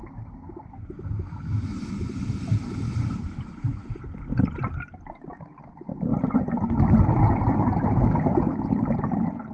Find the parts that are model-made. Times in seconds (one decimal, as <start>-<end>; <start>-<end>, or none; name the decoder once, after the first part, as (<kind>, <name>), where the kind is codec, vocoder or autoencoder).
none